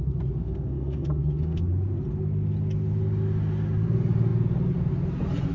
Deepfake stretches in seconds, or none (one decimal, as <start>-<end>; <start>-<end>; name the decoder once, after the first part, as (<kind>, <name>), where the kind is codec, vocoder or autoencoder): 0.4-1.6 (codec, SNAC)